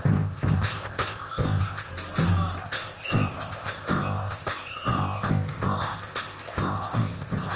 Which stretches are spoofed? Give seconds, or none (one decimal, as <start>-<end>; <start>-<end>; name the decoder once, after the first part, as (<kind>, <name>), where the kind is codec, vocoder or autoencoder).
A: 0.0-1.9 (codec, ZipCodec); 2.6-7.6